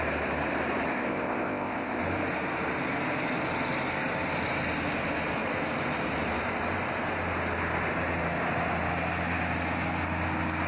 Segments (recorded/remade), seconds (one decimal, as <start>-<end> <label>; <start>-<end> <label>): 0.0-0.9 recorded; 0.9-2.0 remade; 2.0-10.7 recorded